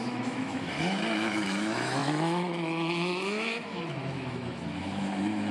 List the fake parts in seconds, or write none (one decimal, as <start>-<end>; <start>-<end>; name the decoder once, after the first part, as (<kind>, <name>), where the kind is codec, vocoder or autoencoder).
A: 0.0-5.5 (autoencoder, DAC-VAE)